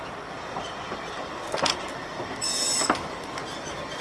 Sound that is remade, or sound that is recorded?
recorded